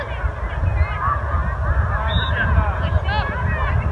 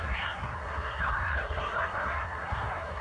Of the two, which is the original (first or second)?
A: first